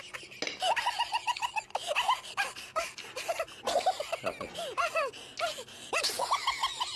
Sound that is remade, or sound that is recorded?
recorded